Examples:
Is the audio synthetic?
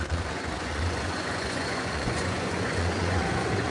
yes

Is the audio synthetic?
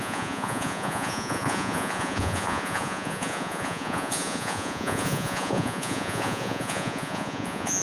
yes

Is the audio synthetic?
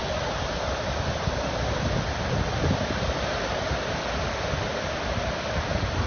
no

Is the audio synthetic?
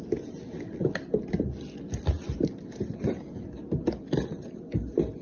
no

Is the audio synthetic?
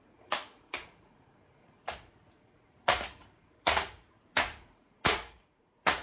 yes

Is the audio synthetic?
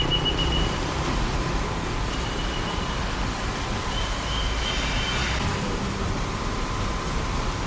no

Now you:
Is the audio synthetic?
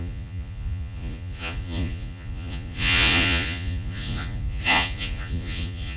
yes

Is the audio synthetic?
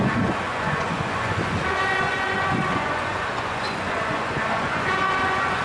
yes